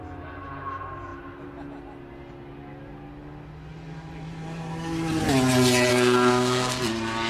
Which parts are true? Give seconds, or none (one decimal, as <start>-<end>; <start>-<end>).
0.0-5.9; 6.8-7.3